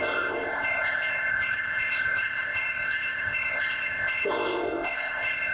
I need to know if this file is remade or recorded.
remade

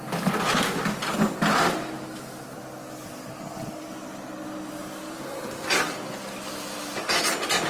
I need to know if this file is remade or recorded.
recorded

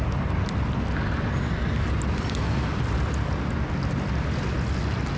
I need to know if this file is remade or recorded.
recorded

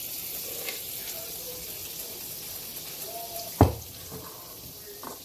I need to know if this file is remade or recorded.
remade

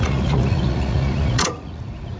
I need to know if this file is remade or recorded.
remade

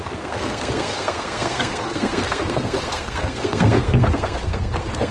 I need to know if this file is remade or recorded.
remade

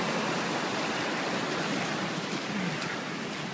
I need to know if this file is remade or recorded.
recorded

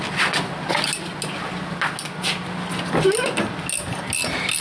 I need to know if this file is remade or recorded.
recorded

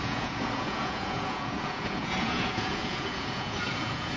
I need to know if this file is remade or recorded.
remade